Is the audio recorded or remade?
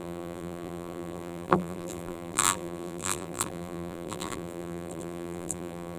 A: remade